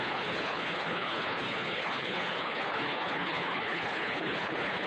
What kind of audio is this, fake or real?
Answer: fake